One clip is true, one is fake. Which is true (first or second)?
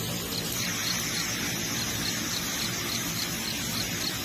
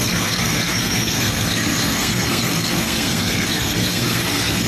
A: first